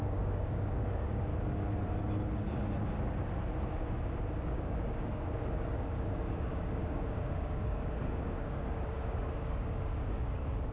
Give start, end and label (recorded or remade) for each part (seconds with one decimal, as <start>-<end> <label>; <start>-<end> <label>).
0.0-1.3 remade; 1.3-4.5 recorded; 4.5-10.7 remade